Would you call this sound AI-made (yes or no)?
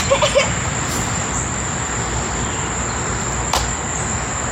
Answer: no